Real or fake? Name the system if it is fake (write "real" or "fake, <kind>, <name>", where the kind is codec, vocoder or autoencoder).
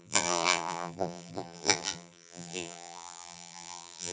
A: fake, vocoder, BigVGAN v2